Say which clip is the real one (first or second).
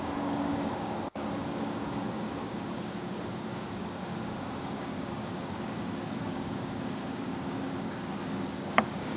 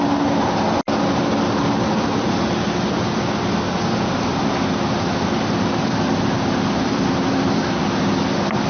second